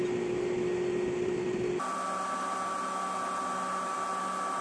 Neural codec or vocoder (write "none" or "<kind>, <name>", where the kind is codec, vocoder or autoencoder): none